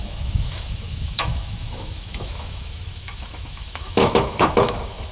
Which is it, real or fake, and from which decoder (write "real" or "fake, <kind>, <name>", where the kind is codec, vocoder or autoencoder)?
fake, autoencoder, DAC-VAE